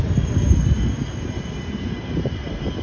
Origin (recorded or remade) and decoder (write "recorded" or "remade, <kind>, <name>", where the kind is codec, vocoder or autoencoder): recorded